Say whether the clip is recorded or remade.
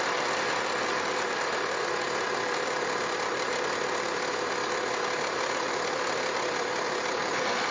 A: recorded